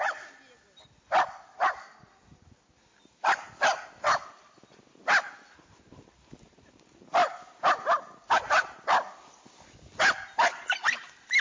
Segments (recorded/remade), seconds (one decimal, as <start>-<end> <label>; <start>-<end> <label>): 0.0-11.4 recorded